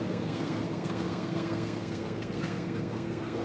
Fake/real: fake